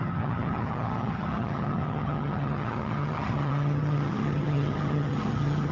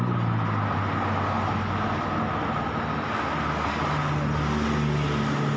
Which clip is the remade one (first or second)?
first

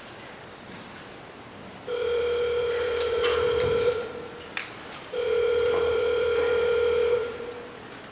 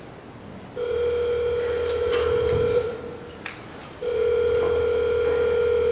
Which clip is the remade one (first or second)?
first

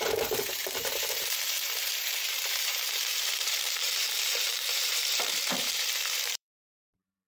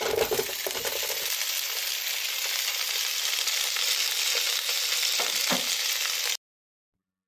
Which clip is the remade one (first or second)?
first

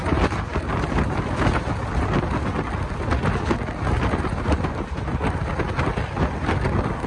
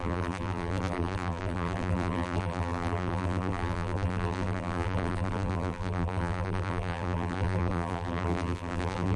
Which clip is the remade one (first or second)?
second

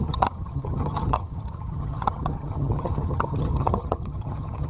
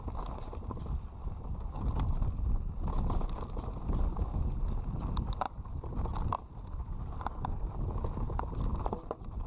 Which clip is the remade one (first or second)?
first